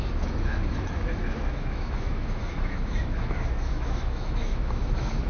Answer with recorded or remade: remade